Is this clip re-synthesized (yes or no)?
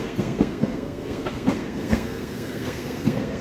yes